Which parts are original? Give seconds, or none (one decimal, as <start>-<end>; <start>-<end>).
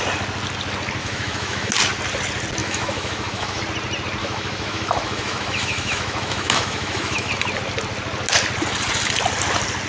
0.0-1.0; 1.7-2.6; 3.6-4.2; 7.3-9.9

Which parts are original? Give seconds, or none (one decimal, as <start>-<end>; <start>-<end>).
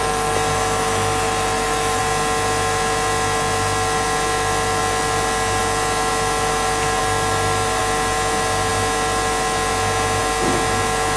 2.0-7.0; 7.8-11.2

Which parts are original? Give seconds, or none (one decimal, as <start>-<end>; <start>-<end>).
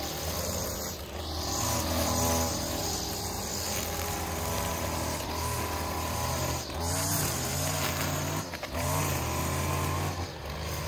0.0-10.9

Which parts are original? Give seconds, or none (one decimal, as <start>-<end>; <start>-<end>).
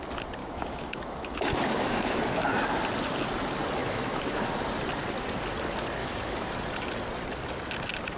0.0-0.4; 2.2-3.8; 4.5-6.0; 6.5-8.2